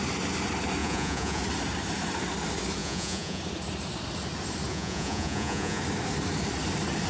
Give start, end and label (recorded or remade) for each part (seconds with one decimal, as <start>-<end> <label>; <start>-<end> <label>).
0.0-0.8 recorded; 0.8-1.4 remade; 1.4-2.8 recorded; 2.8-3.4 remade; 3.4-4.7 recorded; 4.7-5.8 remade; 5.8-7.1 recorded